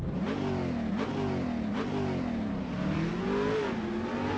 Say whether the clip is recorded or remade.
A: recorded